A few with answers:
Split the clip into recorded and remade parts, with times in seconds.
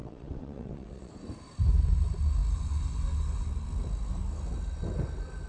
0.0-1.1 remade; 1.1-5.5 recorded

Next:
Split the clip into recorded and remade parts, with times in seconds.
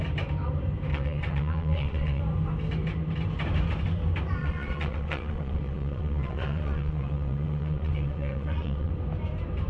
0.0-0.9 recorded; 0.9-2.2 remade; 2.2-4.4 recorded; 4.4-8.9 remade; 8.9-9.7 recorded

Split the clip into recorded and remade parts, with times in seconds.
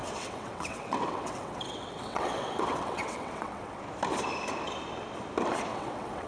0.0-3.8 remade; 3.8-5.7 recorded; 5.7-6.3 remade